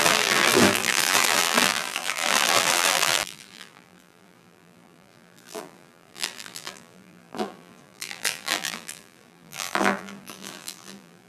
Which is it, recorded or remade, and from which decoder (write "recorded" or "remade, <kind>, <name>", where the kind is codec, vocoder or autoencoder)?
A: remade, vocoder, BigVGAN v2